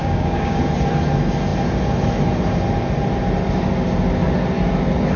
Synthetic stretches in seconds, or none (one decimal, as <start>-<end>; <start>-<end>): 0.0-0.6